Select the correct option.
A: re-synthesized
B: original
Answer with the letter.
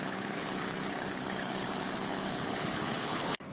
A